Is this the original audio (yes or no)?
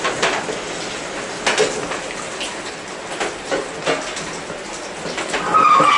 yes